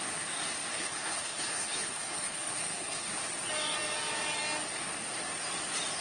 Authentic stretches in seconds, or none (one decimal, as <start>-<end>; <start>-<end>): 0.0-0.7; 3.1-6.0